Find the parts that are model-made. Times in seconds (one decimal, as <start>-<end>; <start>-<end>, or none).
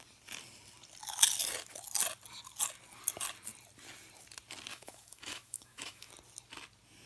4.7-6.1